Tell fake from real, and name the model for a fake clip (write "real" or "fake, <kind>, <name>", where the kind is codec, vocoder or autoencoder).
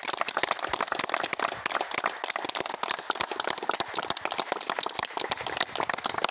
real